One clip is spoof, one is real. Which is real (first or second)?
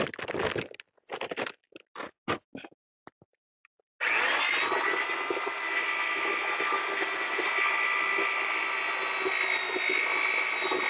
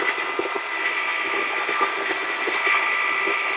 first